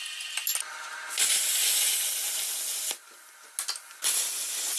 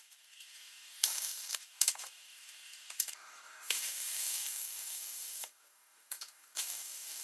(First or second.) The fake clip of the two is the second